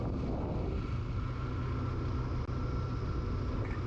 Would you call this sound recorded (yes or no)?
yes